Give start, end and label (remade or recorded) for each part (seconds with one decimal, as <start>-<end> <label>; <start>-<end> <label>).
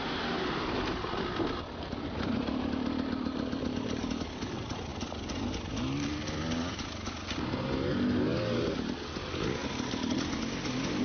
0.0-11.0 recorded